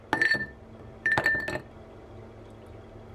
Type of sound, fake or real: real